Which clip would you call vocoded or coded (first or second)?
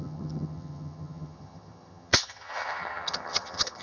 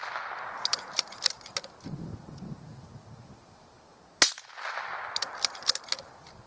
first